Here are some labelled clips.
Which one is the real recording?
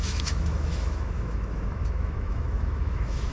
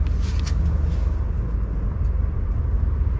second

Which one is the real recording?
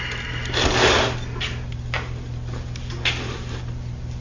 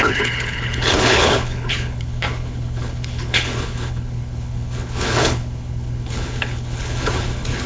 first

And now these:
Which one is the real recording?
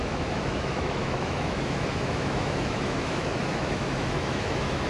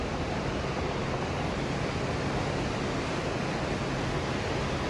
second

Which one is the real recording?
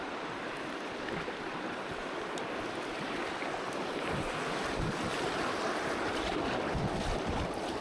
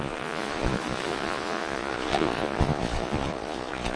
first